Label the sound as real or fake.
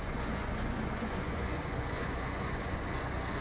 fake